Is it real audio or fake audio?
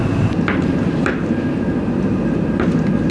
real